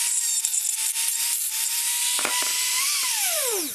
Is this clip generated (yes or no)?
yes